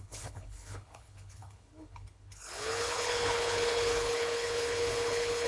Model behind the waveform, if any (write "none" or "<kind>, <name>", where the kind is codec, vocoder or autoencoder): codec, HILCodec